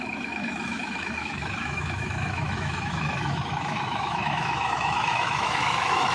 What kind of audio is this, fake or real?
fake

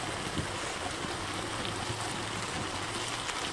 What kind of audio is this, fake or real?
real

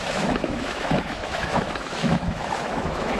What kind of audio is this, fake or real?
fake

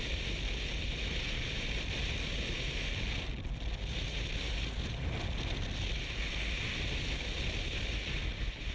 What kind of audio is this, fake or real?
real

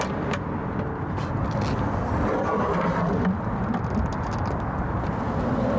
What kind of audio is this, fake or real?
real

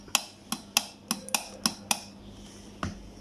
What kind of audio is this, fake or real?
real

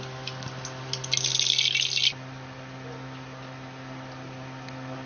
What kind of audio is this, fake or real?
real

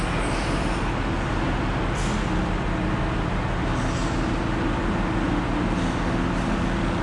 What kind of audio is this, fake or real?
real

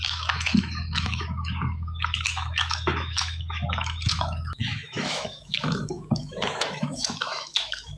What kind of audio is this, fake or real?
fake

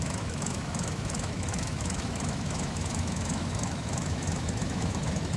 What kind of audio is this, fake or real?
fake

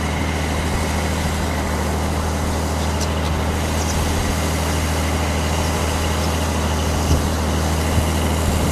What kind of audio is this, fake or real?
real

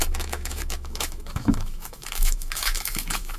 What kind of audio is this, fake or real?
fake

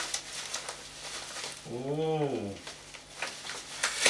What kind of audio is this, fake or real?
real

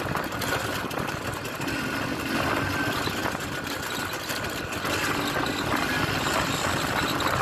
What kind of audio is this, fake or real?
real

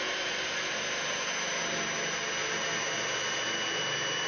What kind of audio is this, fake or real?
real